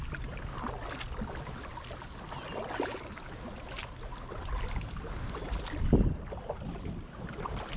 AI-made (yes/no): no